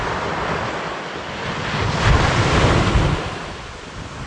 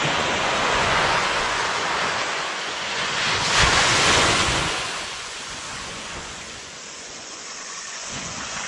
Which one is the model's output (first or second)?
second